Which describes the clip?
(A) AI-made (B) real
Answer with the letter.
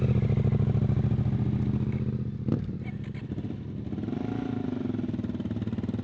B